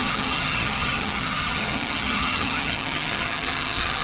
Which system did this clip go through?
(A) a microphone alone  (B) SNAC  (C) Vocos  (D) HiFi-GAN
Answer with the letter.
D